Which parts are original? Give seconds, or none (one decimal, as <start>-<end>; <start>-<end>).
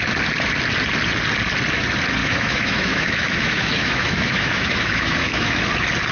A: 0.0-2.2; 5.6-6.1